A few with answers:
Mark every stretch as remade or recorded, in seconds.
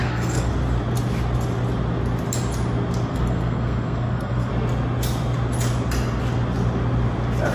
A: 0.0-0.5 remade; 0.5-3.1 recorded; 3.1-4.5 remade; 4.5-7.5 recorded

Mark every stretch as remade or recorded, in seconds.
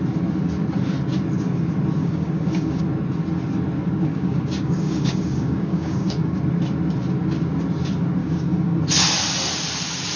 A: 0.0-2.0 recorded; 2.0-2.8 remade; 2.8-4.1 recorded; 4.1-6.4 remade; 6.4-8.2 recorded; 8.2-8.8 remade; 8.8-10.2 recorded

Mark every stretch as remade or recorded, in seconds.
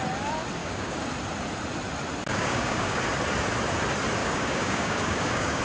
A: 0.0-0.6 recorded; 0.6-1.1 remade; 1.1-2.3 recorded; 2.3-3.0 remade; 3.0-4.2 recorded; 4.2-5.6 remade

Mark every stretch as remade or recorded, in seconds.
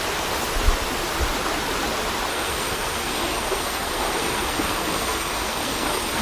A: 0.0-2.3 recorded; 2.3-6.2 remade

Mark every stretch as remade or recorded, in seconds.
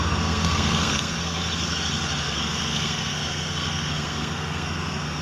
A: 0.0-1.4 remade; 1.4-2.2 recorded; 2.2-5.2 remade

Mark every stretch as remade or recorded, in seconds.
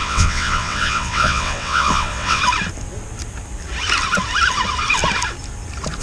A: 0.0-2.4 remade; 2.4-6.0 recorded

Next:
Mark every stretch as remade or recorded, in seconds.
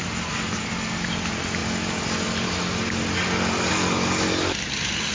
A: 0.0-5.1 recorded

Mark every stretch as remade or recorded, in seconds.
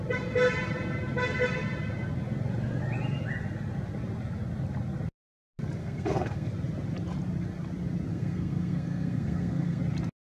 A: 0.0-5.8 recorded; 5.8-6.5 remade; 6.5-8.1 recorded; 8.1-9.8 remade; 9.8-10.4 recorded